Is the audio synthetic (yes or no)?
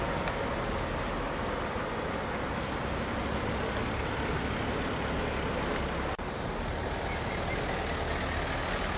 no